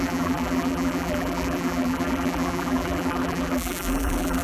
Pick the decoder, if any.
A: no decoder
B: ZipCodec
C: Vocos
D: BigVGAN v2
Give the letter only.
D